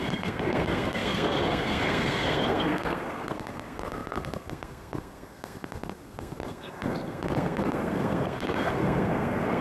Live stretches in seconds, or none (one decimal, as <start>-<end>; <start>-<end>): none